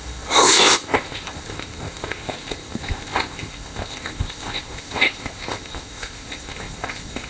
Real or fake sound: fake